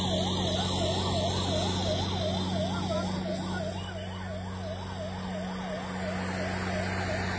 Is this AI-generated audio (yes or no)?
no